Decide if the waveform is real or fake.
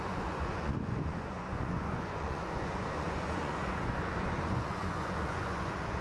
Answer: fake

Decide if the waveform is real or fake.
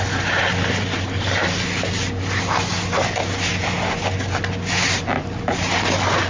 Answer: real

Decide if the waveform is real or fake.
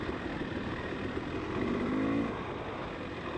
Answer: real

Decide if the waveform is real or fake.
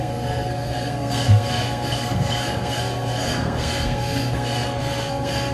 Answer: fake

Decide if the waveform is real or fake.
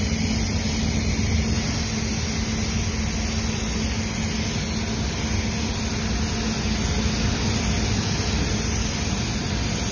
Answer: real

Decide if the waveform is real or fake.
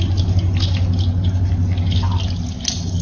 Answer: real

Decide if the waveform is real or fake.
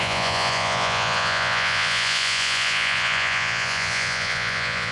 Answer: fake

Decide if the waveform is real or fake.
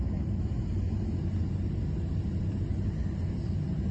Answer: real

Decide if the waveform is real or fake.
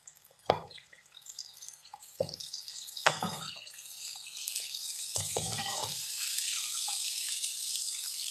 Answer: fake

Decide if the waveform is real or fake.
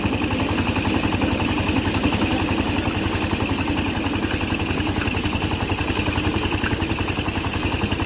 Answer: real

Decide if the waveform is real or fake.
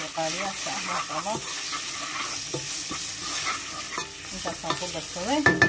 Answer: real